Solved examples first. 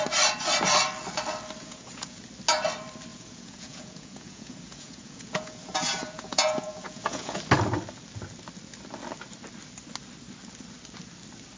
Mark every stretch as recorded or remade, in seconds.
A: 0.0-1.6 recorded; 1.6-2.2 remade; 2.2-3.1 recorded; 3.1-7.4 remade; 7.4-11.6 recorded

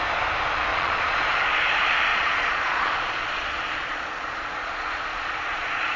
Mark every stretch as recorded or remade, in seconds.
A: 0.0-0.7 recorded; 0.7-1.2 remade; 1.2-2.1 recorded; 2.1-6.0 remade